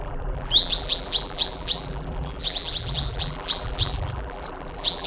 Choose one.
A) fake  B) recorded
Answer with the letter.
A